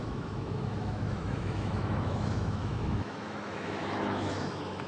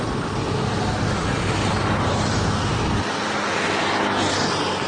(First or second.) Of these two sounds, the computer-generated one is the first